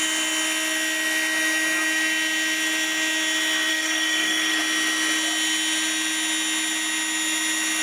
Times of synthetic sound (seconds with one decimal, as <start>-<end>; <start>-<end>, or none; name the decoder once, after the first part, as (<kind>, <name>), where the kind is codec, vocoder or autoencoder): 3.7-4.6 (codec, SNAC)